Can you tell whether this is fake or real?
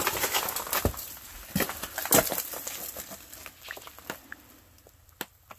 real